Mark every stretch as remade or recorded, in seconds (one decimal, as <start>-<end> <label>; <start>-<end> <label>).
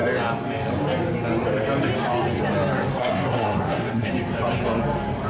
0.0-2.9 recorded; 2.9-4.1 remade; 4.1-5.3 recorded